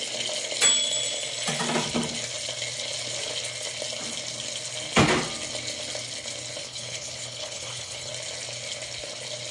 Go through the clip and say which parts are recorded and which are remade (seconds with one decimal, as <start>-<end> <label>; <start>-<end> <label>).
0.0-6.6 recorded; 6.6-8.1 remade; 8.1-9.5 recorded